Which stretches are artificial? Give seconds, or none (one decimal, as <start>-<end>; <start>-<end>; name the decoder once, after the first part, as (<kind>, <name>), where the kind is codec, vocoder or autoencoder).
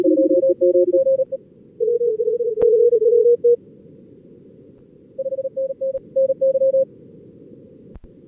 none